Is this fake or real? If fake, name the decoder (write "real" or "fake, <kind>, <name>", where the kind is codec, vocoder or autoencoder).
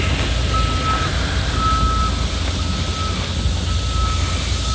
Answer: real